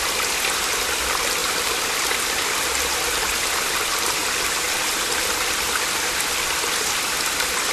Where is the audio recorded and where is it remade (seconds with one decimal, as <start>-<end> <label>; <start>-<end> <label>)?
0.0-7.7 recorded